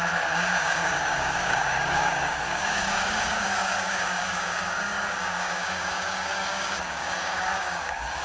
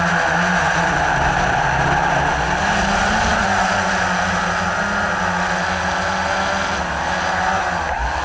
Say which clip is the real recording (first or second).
second